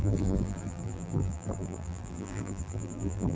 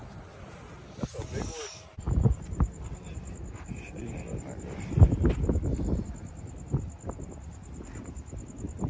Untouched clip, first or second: second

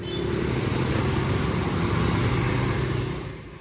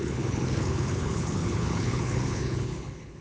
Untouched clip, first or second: first